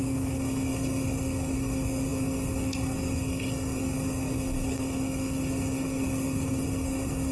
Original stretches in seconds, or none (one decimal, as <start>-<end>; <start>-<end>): none